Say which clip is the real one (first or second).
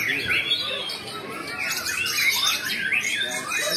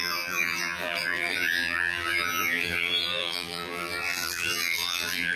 first